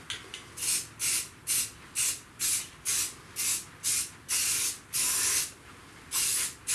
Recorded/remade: recorded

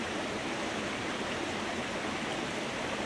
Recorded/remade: remade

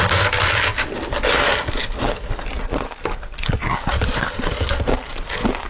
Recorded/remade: recorded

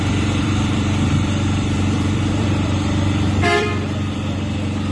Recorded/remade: remade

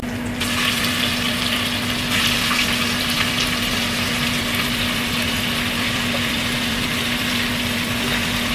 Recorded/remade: recorded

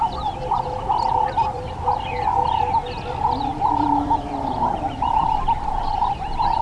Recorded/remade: remade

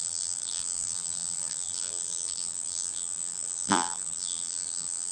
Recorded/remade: remade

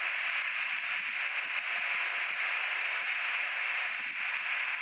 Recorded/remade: recorded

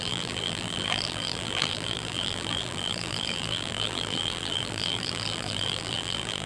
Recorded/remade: remade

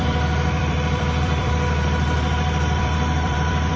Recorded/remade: remade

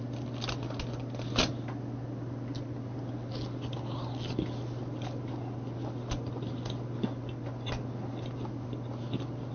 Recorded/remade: recorded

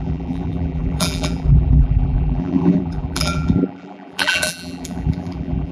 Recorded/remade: remade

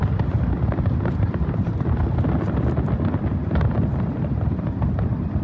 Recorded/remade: recorded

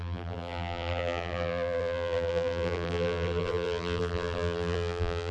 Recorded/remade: remade